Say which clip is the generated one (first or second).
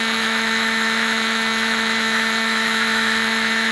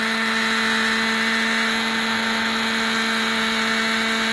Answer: first